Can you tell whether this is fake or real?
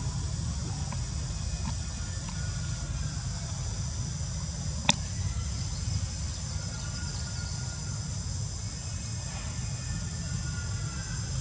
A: real